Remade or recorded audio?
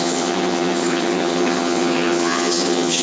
remade